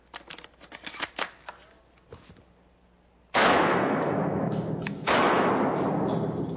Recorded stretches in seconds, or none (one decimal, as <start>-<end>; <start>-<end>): 0.0-3.4; 5.5-6.6